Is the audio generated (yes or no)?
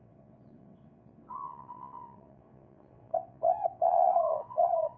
yes